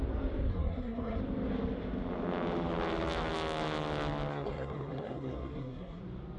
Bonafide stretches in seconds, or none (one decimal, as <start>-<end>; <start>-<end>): 0.0-0.5; 1.2-4.3; 6.0-6.4